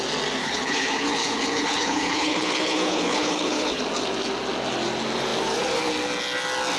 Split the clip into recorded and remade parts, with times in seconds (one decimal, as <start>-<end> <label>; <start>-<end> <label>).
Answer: 0.0-0.4 recorded; 0.4-3.8 remade; 3.8-6.8 recorded